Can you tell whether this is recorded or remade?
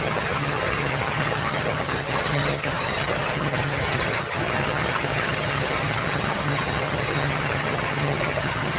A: remade